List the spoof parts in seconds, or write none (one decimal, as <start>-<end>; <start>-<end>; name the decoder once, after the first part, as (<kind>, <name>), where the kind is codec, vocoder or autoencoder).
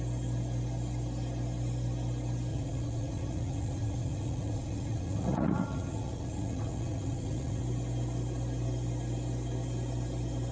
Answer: 2.5-7.6 (vocoder, Vocos)